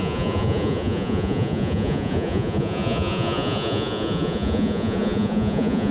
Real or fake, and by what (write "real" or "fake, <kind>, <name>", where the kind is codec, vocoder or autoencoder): fake, vocoder, Vocos